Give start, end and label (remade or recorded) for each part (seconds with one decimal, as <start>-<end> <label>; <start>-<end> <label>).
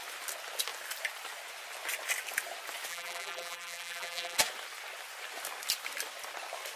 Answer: 0.0-2.9 recorded; 2.9-4.4 remade; 4.4-6.8 recorded